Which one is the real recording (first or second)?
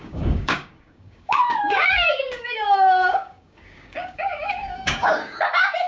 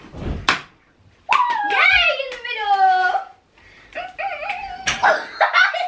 second